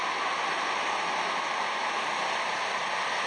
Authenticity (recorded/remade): recorded